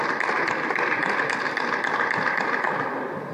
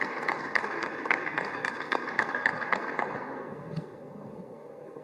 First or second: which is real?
first